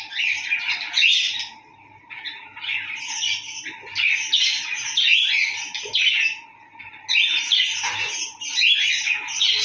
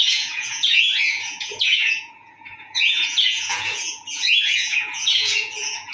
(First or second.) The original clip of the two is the first